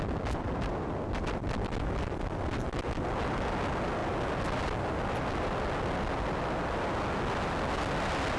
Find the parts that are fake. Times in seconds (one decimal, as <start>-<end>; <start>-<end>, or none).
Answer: none